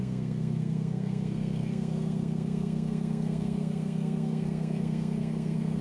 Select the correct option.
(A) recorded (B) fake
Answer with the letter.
B